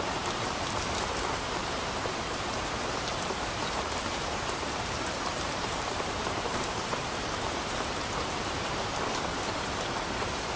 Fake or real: fake